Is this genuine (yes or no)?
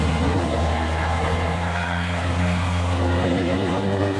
no